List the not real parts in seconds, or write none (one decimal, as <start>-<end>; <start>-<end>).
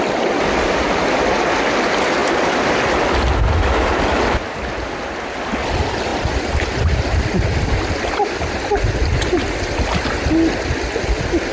none